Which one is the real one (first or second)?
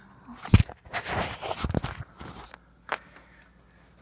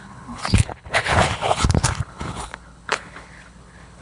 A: first